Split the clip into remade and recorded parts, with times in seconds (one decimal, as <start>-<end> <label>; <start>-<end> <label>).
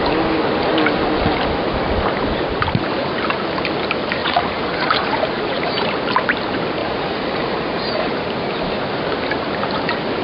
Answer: 0.0-4.2 recorded; 4.2-5.7 remade; 5.7-6.8 recorded; 6.8-8.1 remade; 8.1-10.2 recorded